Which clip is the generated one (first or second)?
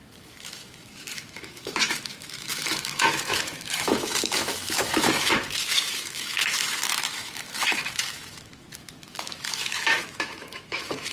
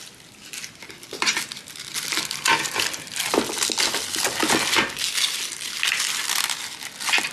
first